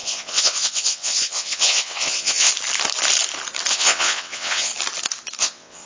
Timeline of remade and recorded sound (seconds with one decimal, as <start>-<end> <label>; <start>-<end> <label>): 0.0-2.5 remade; 2.5-3.7 recorded; 3.7-4.7 remade; 4.7-5.4 recorded; 5.4-5.9 remade